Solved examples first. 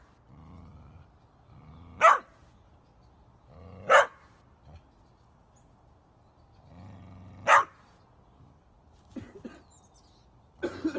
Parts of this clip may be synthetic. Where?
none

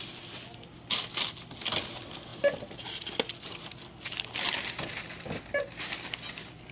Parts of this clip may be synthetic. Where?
none

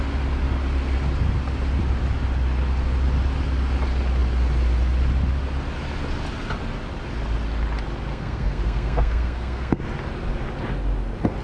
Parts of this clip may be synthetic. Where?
8.1-9.8 (codec, SNAC)